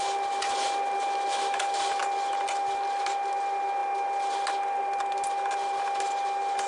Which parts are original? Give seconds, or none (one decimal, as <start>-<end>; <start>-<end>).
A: 0.0-6.7

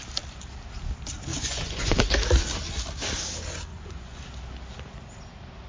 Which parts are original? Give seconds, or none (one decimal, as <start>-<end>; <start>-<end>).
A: 0.0-1.3; 2.1-3.7; 4.2-5.7

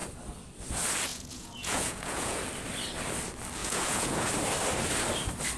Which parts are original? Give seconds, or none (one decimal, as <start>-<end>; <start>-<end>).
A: 0.0-1.1; 2.4-3.6; 4.3-5.6

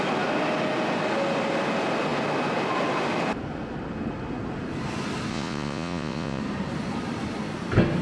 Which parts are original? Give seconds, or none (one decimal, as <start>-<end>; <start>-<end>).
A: 0.0-5.3; 6.4-8.0

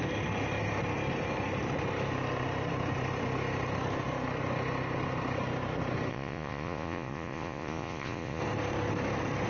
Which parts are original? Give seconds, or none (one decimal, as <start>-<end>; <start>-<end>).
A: 0.0-6.1; 8.4-9.5

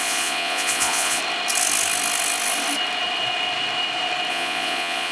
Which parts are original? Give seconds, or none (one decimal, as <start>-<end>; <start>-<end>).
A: 1.2-4.3

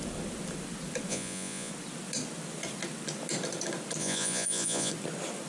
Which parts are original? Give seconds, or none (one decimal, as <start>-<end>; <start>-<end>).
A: 0.0-1.1; 1.7-4.0; 4.9-5.5

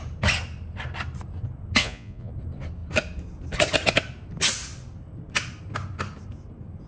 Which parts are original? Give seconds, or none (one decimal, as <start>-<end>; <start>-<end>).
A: 0.0-1.8; 2.3-6.9